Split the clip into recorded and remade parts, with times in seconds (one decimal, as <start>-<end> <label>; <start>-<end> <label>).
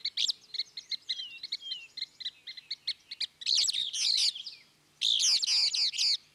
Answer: 0.0-6.3 recorded